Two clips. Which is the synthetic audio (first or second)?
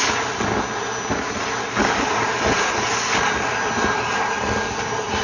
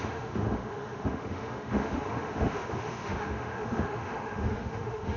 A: second